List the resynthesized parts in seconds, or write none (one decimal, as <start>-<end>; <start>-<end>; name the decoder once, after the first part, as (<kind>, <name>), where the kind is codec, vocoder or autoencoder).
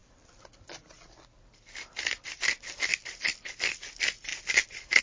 0.0-2.4 (vocoder, BigVGAN v2); 4.3-5.0